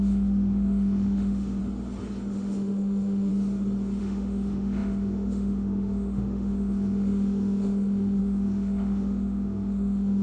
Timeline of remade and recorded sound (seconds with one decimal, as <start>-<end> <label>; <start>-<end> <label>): 0.0-1.6 remade; 1.6-2.3 recorded; 2.3-3.3 remade; 3.3-4.0 recorded; 4.0-10.2 remade